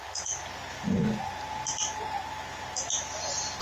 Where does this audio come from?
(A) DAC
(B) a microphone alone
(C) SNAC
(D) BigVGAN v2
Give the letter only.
B